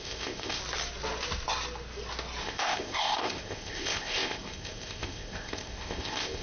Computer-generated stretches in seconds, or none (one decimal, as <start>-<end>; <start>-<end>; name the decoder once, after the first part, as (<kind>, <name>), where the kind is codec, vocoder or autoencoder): 0.0-0.6 (codec, ZipCodec); 2.4-6.4